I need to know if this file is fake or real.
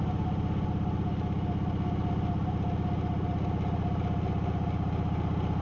real